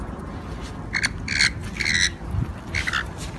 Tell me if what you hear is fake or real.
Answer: real